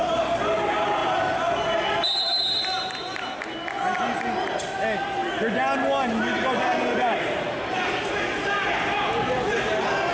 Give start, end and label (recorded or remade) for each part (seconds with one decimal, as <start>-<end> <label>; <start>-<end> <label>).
0.0-10.1 recorded